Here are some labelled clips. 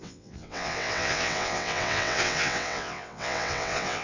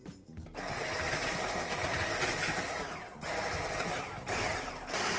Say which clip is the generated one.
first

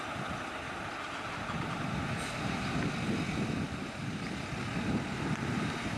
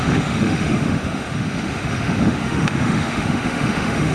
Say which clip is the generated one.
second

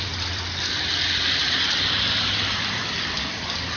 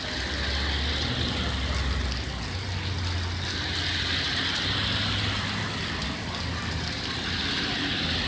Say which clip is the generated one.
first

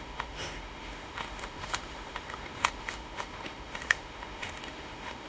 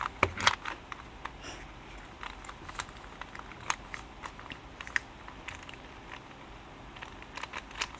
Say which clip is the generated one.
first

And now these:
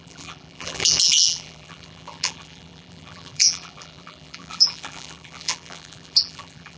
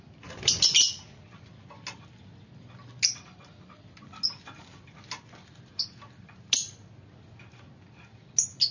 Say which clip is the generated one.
first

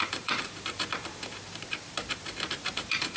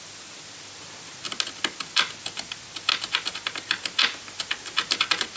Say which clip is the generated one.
first